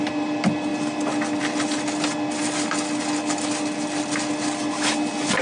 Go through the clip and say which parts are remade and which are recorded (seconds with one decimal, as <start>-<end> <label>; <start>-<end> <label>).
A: 0.0-5.4 recorded